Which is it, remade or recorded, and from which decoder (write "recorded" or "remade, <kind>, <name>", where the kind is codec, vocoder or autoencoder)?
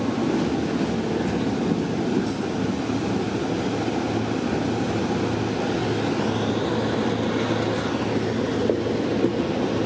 recorded